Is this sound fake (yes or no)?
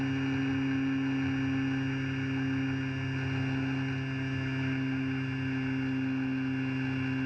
no